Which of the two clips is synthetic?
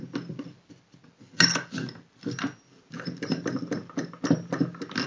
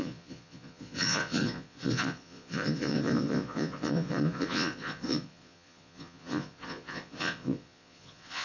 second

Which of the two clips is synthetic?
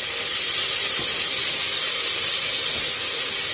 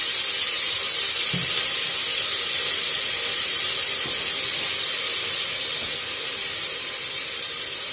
second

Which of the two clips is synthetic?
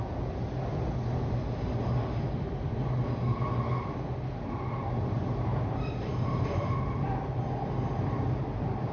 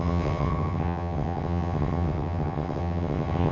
second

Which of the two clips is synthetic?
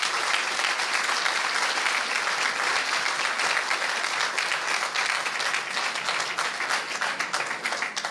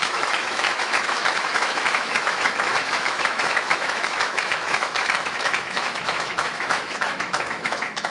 second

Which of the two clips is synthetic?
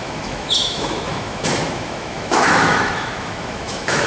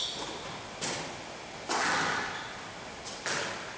first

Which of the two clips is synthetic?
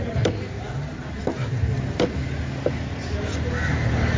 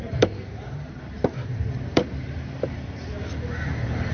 second